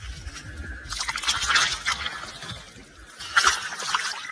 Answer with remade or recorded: recorded